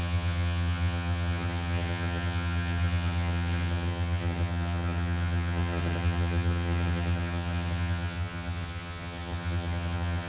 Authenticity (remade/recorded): remade